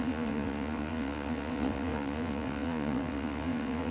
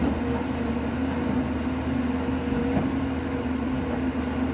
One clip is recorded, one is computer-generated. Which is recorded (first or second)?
second